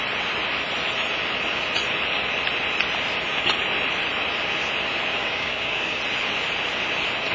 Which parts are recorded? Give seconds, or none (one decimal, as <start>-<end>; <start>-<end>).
0.0-5.2; 6.0-7.3